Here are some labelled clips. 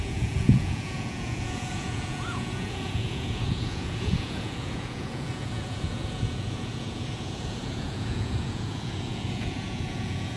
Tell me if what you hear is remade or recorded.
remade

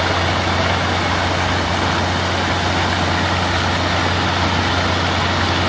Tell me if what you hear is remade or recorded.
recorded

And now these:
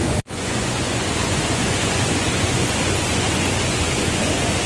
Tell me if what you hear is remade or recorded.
remade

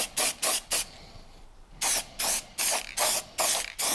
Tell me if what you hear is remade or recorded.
recorded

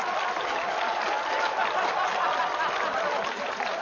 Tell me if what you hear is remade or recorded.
recorded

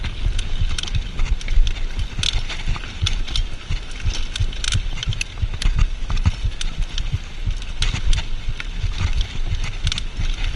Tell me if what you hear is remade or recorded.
recorded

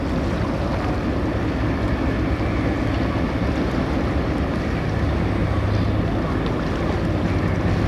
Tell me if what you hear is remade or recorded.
recorded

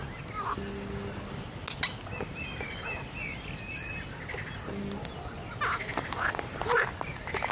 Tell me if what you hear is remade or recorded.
recorded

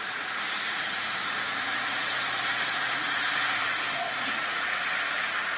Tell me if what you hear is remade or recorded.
remade